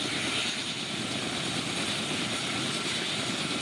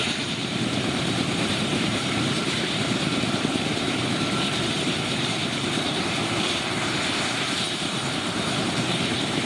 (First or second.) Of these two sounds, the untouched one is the first